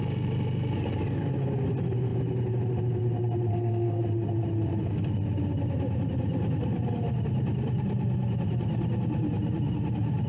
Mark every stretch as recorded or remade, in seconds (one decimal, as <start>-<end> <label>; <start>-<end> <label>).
0.0-3.5 recorded; 3.5-4.0 remade; 4.0-10.3 recorded